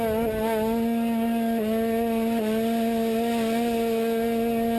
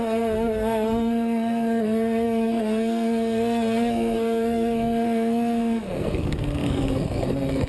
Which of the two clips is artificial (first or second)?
second